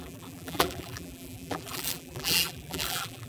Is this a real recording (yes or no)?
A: no